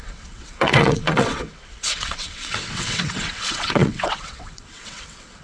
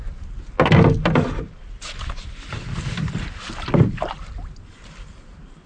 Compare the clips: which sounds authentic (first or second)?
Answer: second